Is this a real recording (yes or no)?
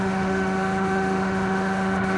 no